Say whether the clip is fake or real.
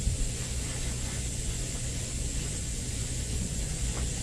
fake